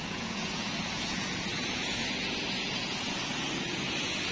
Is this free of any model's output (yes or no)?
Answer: no